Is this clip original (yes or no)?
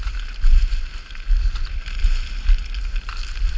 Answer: yes